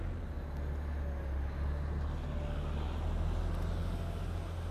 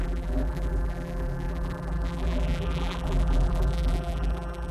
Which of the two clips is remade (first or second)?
second